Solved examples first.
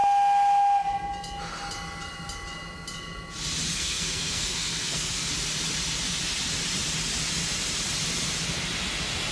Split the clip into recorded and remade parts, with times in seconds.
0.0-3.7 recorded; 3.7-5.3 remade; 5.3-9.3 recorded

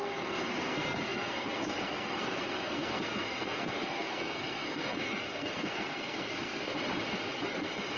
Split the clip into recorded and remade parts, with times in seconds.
0.0-6.8 remade; 6.8-7.5 recorded; 7.5-8.0 remade

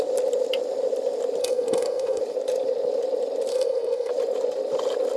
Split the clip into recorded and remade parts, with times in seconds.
0.0-1.4 recorded; 1.4-2.2 remade; 2.2-3.5 recorded; 3.5-4.1 remade; 4.1-5.2 recorded

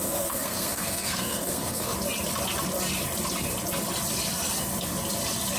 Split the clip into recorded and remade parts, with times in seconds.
0.0-1.9 remade; 1.9-5.6 recorded